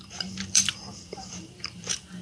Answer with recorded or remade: remade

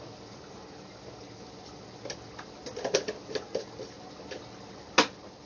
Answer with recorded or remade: recorded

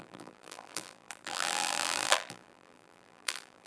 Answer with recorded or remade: remade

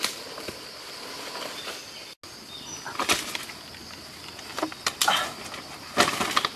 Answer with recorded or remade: recorded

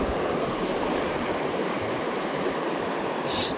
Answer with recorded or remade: remade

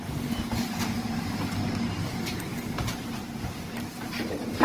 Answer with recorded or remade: remade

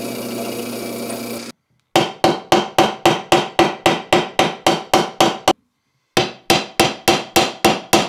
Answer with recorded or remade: recorded